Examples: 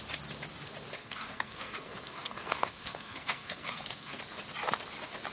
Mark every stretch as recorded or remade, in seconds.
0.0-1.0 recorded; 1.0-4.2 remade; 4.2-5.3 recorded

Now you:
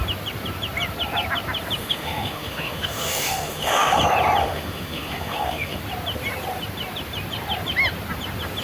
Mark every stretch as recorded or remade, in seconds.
0.0-1.8 recorded; 1.8-4.0 remade; 4.0-4.4 recorded; 4.4-5.8 remade; 5.8-8.6 recorded

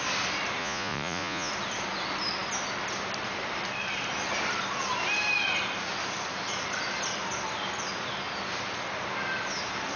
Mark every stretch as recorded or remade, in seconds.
0.0-0.6 recorded; 0.6-1.5 remade; 1.5-10.0 recorded